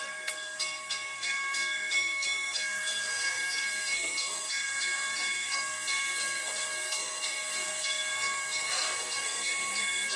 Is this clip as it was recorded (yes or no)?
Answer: no